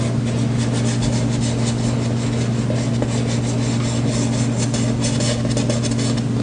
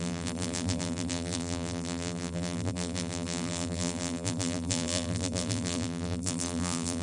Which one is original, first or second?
first